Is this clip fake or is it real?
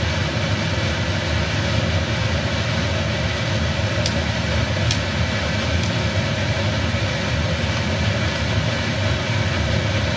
real